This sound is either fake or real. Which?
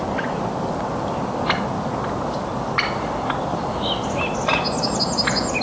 real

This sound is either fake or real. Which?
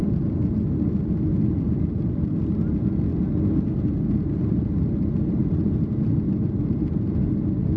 real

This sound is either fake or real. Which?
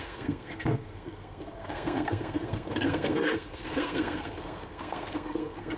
fake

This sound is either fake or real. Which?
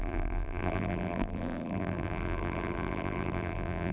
fake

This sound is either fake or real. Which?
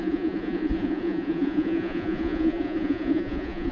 fake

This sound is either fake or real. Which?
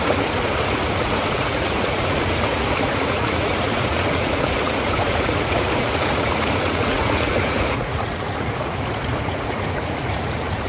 fake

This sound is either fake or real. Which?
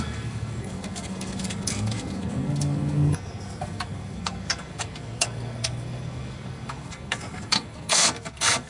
fake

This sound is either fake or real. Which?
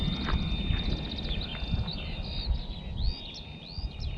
real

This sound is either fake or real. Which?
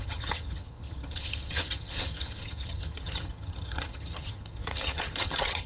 fake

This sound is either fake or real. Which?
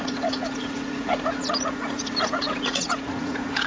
fake